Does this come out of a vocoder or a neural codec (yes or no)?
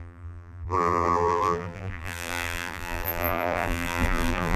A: yes